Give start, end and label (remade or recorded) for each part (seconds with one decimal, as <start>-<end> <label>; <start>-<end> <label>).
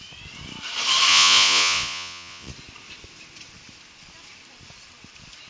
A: 0.0-1.1 recorded; 1.1-2.5 remade; 2.5-5.5 recorded